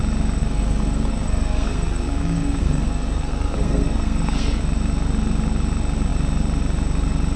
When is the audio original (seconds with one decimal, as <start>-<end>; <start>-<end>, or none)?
0.0-0.4; 4.6-7.4